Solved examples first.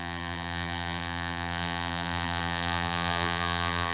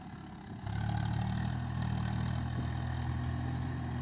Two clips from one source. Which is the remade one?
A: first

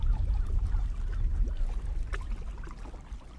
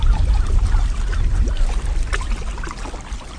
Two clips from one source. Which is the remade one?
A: second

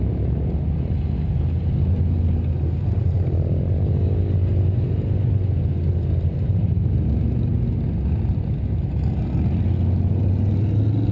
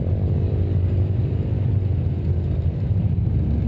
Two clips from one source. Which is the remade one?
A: second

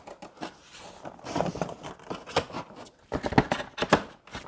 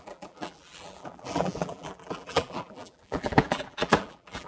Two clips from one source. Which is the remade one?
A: second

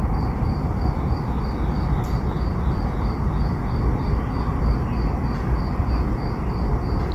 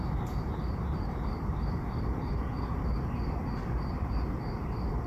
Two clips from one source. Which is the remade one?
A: second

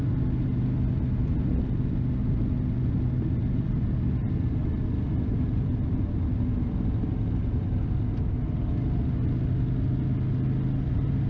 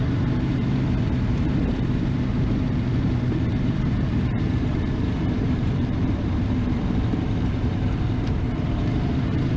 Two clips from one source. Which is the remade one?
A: second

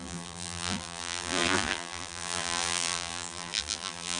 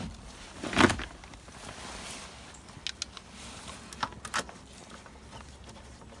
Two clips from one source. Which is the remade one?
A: first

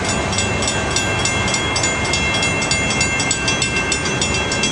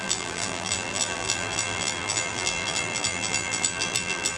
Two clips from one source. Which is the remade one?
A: second